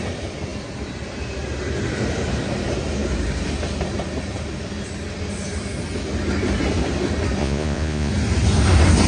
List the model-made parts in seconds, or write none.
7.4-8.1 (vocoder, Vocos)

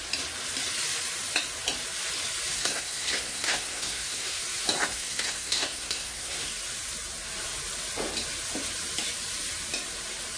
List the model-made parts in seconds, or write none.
2.5-4.4 (codec, SNAC); 4.9-6.5

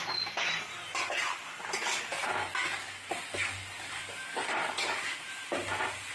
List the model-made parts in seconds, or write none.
2.4-5.3 (codec, DAC)

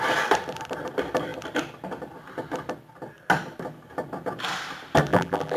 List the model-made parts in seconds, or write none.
5.1-5.6 (vocoder, BigVGAN v2)

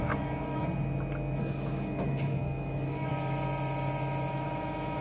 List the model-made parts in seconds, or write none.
0.0-0.6 (autoencoder, DAC-VAE); 1.4-3.1; 4.3-5.0